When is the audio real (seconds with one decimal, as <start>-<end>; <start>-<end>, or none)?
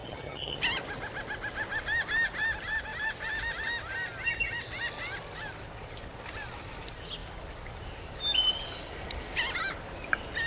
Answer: 0.6-10.5